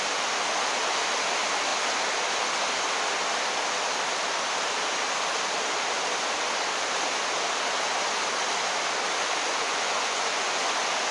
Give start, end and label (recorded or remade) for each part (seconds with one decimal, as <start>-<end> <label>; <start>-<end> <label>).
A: 0.0-9.5 recorded; 9.5-10.7 remade; 10.7-11.1 recorded